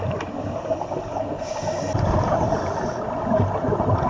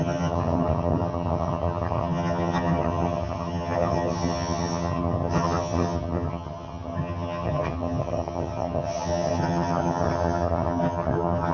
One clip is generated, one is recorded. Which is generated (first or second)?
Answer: second